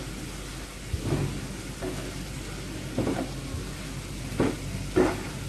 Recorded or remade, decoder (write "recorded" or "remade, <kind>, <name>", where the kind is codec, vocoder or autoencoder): recorded